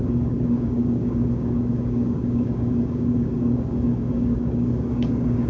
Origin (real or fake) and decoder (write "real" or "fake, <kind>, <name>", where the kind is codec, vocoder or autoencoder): fake, codec, DAC